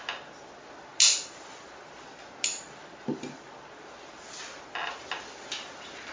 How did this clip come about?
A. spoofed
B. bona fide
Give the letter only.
B